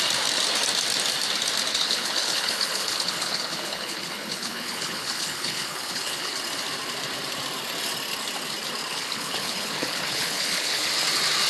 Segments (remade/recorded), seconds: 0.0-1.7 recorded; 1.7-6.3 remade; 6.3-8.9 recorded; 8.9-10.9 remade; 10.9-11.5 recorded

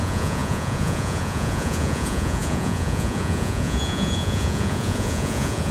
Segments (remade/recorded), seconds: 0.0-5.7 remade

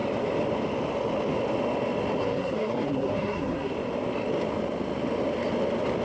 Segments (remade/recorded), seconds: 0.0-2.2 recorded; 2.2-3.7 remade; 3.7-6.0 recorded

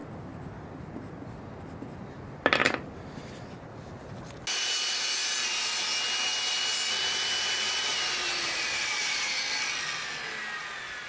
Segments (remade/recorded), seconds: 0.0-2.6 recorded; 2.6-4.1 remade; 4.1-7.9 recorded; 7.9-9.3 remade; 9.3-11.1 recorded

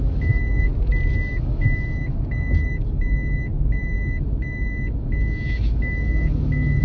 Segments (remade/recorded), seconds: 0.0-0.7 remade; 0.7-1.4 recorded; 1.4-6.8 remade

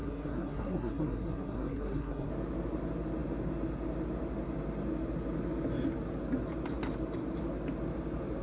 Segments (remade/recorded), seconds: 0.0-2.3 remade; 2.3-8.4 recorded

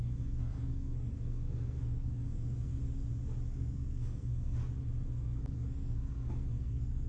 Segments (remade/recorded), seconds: 0.0-2.8 remade; 2.8-3.5 recorded; 3.5-4.6 remade; 4.6-5.1 recorded; 5.1-7.1 remade

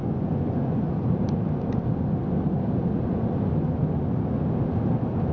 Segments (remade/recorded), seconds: 0.0-0.9 remade; 0.9-5.3 recorded